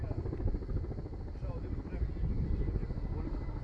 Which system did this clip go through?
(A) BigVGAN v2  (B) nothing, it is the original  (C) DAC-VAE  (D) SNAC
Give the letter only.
B